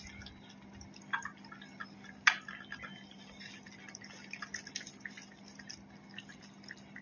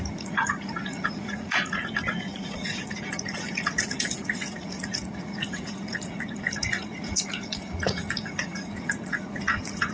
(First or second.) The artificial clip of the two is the second